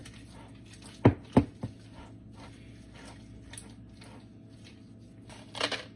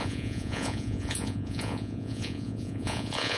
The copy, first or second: second